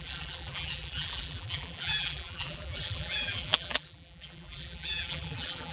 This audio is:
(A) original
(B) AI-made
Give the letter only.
B